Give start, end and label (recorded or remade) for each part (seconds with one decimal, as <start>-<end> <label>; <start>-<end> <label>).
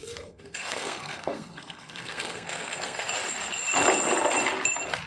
0.0-3.1 remade; 3.1-5.1 recorded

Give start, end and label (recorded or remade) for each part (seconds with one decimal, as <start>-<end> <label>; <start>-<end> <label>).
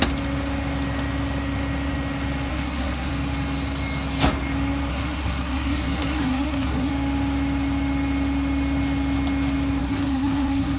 0.0-2.5 recorded; 2.5-3.1 remade; 3.1-4.9 recorded; 4.9-6.9 remade; 6.9-9.8 recorded; 9.8-10.8 remade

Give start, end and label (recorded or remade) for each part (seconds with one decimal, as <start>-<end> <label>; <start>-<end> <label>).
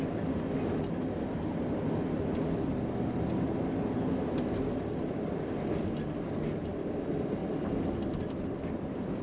0.0-9.2 recorded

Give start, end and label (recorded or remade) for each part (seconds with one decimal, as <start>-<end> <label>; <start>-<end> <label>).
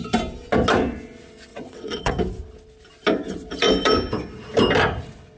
0.0-1.5 recorded; 1.5-2.1 remade; 2.1-5.4 recorded